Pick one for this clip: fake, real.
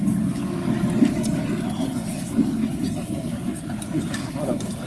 real